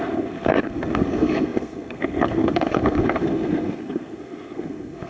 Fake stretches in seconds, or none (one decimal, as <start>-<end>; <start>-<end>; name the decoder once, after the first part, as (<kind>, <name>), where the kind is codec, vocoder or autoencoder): 0.0-5.1 (codec, SNAC)